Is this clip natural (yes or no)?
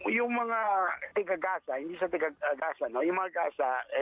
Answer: yes